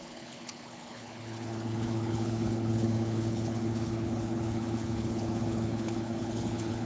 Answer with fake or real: fake